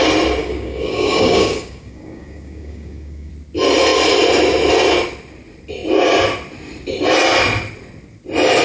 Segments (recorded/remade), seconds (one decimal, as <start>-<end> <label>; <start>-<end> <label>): 0.0-0.4 recorded; 0.4-3.3 remade; 3.3-8.6 recorded